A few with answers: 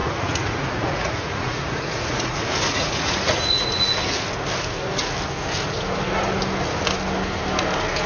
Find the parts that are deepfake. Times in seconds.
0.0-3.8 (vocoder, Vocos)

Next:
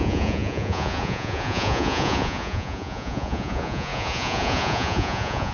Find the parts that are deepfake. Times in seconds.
0.0-5.5 (vocoder, Vocos)

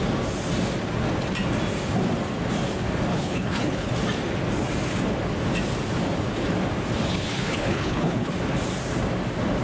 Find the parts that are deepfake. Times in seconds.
3.1-3.9 (codec, HILCodec); 7.1-8.3